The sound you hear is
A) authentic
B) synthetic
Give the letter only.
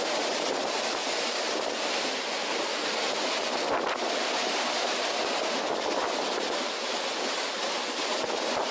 B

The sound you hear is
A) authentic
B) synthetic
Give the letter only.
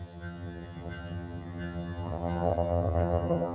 B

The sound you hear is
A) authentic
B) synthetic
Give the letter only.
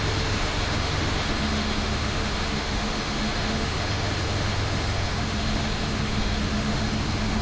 B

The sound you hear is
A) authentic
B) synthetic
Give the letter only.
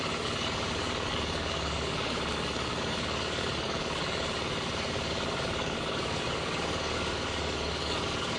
B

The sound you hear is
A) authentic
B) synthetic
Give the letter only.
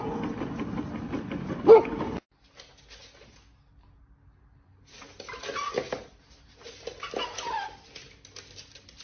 A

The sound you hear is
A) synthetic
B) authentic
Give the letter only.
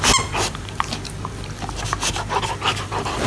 B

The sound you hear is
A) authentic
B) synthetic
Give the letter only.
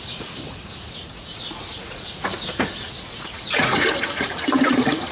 B